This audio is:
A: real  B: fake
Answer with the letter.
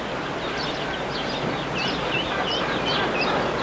A